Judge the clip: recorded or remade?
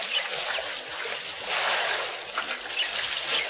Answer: recorded